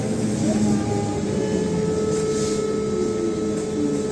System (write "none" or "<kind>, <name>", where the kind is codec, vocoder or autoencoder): none